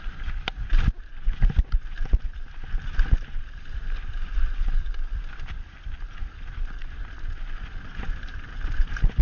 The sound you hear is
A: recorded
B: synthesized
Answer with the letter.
A